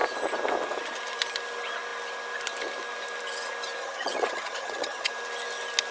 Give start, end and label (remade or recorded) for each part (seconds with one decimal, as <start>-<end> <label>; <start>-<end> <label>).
0.0-3.8 recorded; 3.8-5.1 remade; 5.1-5.9 recorded